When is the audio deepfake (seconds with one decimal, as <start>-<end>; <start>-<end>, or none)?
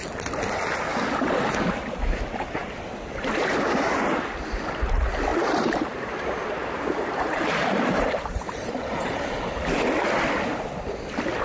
5.3-9.2